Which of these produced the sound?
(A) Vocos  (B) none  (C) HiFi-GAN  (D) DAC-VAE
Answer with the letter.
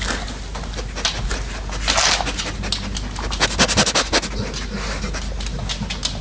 B